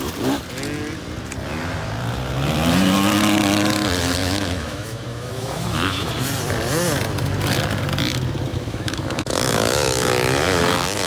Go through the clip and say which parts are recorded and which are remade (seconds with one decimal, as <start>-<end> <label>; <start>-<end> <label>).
0.0-4.2 recorded; 4.2-6.1 remade; 6.1-8.5 recorded; 8.5-10.6 remade; 10.6-11.1 recorded